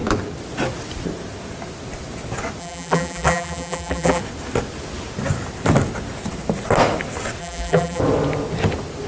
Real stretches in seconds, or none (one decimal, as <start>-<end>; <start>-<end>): 0.0-2.6; 4.2-7.4; 8.0-9.1